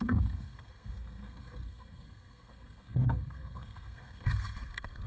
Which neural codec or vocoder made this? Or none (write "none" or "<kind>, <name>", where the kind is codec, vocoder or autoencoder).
codec, SNAC